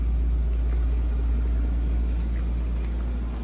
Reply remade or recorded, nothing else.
recorded